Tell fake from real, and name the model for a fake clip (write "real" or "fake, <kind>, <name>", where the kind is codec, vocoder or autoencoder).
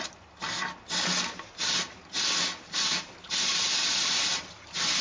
real